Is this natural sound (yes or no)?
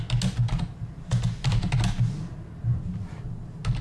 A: yes